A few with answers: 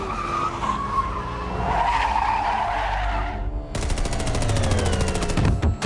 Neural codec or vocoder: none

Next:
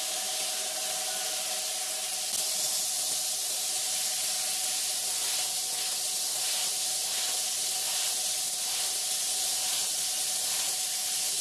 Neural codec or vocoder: none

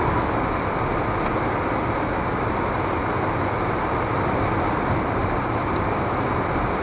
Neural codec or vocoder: none